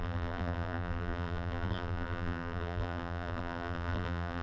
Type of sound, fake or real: fake